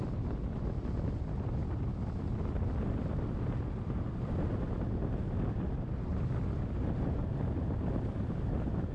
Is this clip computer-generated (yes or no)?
no